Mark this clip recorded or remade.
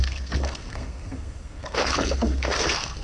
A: remade